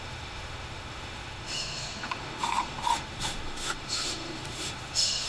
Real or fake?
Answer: fake